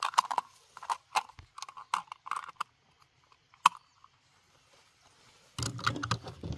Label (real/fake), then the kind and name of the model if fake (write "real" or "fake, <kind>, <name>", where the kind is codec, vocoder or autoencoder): real